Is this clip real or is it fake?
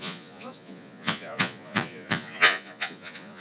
fake